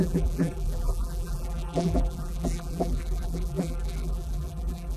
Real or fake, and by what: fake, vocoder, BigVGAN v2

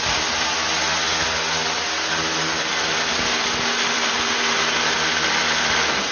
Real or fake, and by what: real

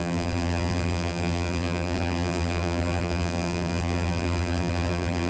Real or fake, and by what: fake, vocoder, BigVGAN v2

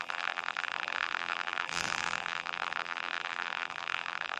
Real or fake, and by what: fake, vocoder, BigVGAN v2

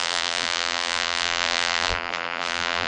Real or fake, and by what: fake, vocoder, BigVGAN v2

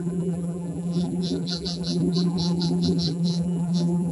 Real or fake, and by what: fake, vocoder, BigVGAN v2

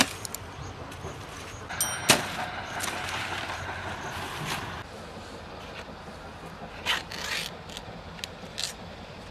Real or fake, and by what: real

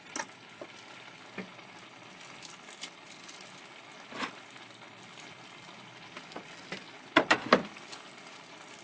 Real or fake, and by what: real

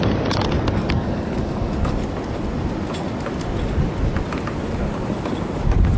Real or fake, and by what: real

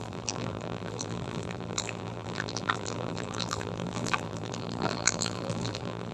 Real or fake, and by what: fake, vocoder, BigVGAN v2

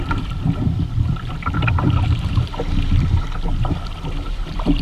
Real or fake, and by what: fake, vocoder, BigVGAN v2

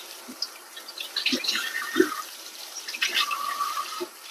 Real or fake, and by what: fake, vocoder, BigVGAN v2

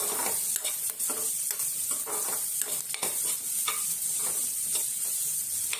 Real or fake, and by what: real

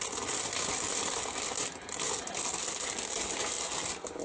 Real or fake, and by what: real